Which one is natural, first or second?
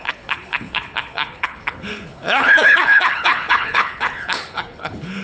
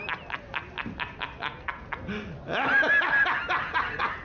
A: second